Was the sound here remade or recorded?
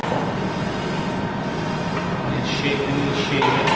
recorded